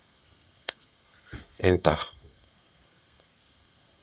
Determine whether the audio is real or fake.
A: fake